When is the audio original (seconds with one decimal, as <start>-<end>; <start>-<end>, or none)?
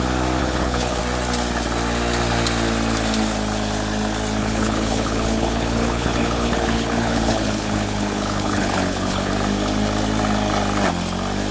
0.0-0.4; 1.0-4.4; 9.3-11.5